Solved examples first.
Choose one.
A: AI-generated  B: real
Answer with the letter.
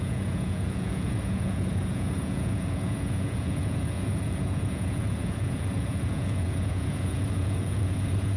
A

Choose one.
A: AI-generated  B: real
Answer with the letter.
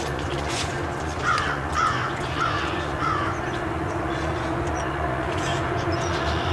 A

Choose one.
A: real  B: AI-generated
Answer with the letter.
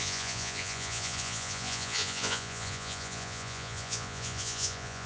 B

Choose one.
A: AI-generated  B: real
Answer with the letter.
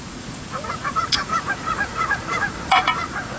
A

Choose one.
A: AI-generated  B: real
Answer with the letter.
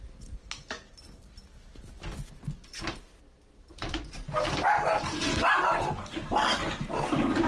B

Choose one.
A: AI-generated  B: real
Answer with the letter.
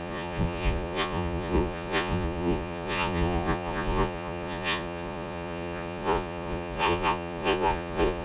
A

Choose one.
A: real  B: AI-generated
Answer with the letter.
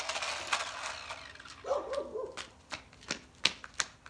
A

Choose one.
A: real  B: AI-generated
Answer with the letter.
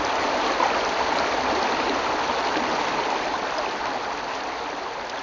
A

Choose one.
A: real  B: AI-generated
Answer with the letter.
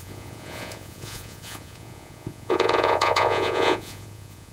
B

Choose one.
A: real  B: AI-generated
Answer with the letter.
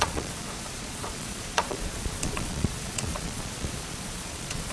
B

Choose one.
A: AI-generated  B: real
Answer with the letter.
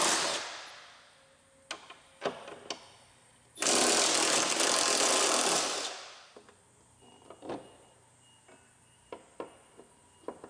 B